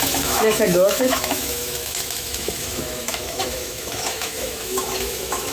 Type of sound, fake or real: fake